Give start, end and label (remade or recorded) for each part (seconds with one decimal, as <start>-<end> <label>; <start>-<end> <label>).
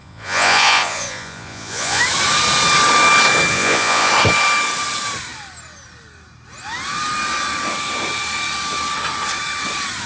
0.0-2.0 remade; 2.0-3.5 recorded; 3.5-4.1 remade; 4.1-10.1 recorded